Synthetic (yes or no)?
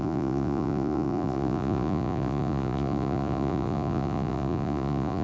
yes